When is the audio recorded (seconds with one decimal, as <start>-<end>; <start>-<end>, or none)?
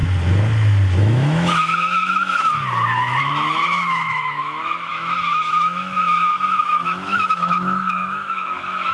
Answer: 0.0-1.0; 2.5-3.2